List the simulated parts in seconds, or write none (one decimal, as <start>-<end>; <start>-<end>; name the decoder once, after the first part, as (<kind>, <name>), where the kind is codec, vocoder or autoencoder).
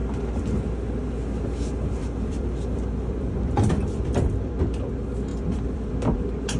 2.0-4.5 (vocoder, BigVGAN v2); 5.3-5.9